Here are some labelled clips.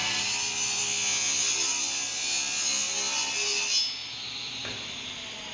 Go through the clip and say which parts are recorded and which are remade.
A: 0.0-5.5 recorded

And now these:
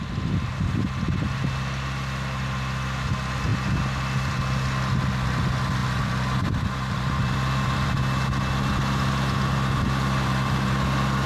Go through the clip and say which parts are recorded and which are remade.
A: 0.0-3.5 recorded; 3.5-4.4 remade; 4.4-5.8 recorded; 5.8-7.9 remade; 7.9-11.3 recorded

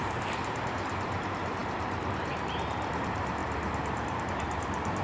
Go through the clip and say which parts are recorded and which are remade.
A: 0.0-5.0 remade

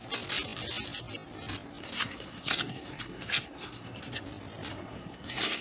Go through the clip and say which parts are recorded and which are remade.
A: 0.0-1.8 recorded; 1.8-4.2 remade; 4.2-4.7 recorded; 4.7-5.6 remade

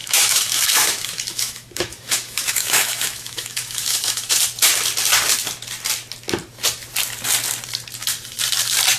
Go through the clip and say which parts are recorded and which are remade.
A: 0.0-4.4 remade; 4.4-9.0 recorded

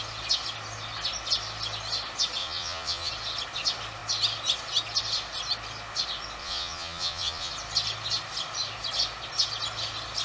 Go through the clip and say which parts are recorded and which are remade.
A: 0.0-2.4 recorded; 2.4-3.1 remade; 3.1-6.4 recorded; 6.4-7.5 remade; 7.5-10.2 recorded

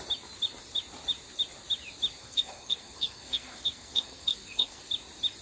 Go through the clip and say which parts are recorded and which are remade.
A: 0.0-2.2 recorded; 2.2-4.8 remade; 4.8-5.4 recorded

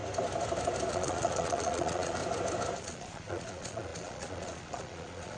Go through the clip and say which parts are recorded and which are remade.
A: 0.0-0.9 recorded; 0.9-2.2 remade; 2.2-2.8 recorded; 2.8-5.4 remade